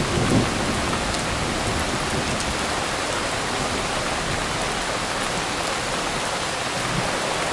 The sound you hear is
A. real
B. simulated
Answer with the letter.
A